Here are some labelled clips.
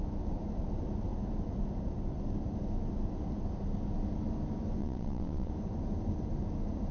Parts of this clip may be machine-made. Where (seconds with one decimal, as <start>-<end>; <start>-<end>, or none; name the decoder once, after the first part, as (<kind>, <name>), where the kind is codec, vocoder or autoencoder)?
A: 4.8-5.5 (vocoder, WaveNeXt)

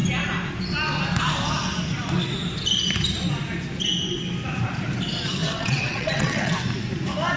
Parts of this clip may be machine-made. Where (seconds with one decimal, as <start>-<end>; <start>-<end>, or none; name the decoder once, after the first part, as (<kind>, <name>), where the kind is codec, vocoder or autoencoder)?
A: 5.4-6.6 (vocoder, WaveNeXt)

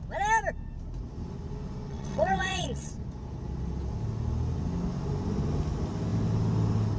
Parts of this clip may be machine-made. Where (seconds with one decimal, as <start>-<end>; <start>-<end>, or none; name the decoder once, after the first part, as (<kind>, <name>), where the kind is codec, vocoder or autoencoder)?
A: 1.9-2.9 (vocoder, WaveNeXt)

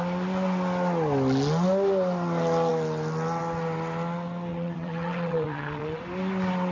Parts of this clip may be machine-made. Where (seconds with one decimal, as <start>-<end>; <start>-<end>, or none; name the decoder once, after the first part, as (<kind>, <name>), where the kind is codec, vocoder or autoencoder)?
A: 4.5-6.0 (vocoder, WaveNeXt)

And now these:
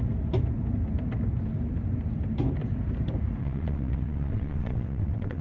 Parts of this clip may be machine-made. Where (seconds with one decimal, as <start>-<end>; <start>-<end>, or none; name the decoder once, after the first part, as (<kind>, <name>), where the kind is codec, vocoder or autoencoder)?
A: 3.4-5.4 (vocoder, WaveNeXt)

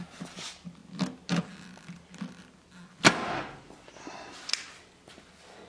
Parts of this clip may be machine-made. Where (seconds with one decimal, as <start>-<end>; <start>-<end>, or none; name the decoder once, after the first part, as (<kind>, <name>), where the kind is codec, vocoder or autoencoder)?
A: none